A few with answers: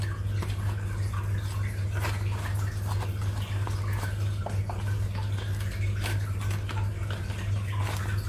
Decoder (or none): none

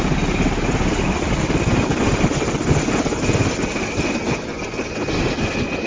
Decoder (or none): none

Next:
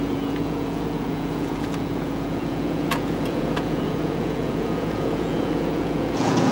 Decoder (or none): vocoder, Vocos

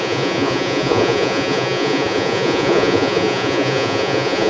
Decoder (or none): vocoder, Vocos